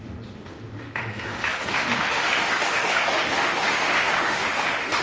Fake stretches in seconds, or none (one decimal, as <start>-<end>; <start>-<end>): 0.0-5.0